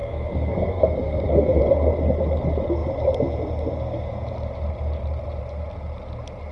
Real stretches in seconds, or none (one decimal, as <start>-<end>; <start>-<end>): 1.6-6.5